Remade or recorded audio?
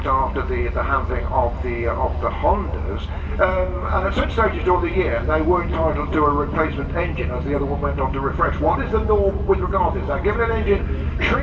recorded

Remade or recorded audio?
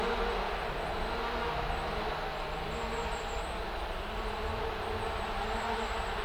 recorded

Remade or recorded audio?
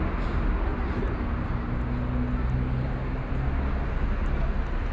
recorded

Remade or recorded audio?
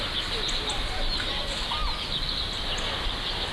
recorded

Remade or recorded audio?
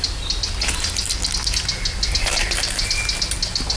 recorded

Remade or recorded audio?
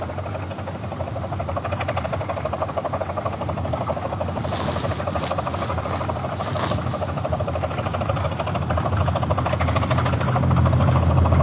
recorded